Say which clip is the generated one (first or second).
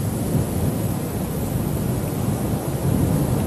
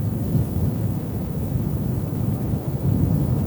second